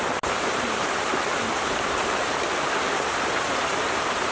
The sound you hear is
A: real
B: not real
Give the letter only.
B